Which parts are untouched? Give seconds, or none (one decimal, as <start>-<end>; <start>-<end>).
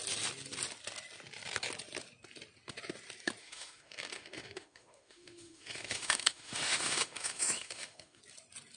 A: 0.0-3.4; 8.2-8.8